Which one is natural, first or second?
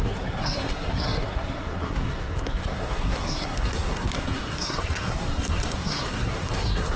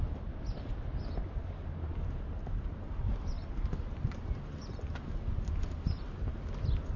second